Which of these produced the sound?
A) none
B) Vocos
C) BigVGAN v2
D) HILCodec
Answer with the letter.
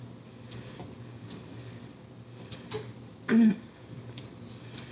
A